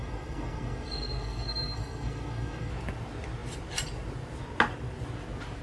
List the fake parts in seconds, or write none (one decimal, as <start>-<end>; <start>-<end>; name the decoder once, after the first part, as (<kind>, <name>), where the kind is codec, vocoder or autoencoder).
0.0-2.7 (codec, SNAC)